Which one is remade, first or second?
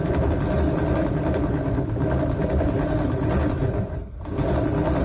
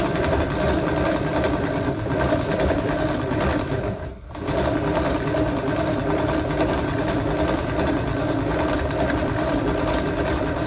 second